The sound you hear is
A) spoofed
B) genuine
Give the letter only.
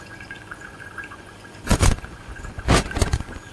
A